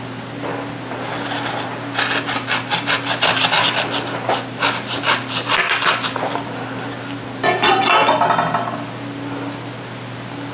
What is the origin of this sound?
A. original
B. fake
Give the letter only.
A